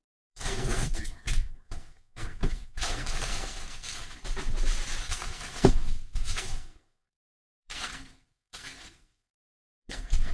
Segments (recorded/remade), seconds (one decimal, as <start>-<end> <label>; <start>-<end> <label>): 0.0-4.2 remade; 4.2-5.0 recorded; 5.0-10.3 remade